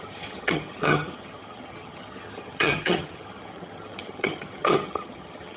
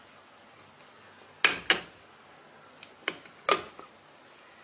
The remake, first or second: first